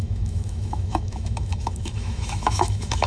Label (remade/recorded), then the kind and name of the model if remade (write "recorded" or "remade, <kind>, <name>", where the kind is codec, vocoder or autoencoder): remade, autoencoder, DAC-VAE